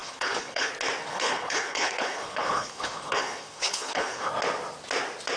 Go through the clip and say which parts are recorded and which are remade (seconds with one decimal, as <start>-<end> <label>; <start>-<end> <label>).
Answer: 0.0-0.7 remade; 0.7-1.1 recorded; 1.1-4.3 remade; 4.3-5.4 recorded